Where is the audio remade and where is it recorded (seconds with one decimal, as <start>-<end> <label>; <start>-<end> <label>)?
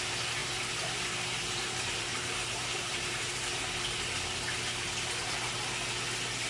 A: 0.0-0.4 recorded; 0.4-3.5 remade; 3.5-6.5 recorded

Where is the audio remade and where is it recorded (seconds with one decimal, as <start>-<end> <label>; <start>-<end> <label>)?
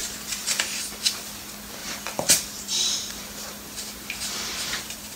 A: 0.0-1.0 remade; 1.0-1.8 recorded; 1.8-5.2 remade